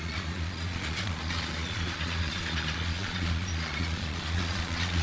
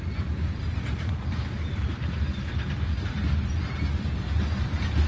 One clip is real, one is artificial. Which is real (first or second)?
second